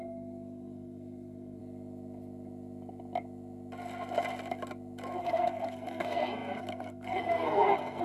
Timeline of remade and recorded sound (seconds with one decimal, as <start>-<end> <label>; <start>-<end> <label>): 0.0-1.6 remade; 1.6-5.2 recorded; 5.2-8.0 remade